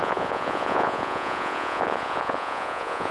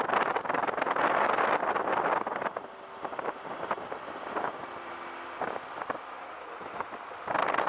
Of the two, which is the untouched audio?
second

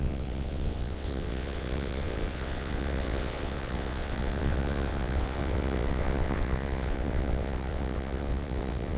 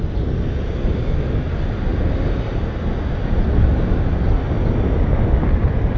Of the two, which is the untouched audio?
second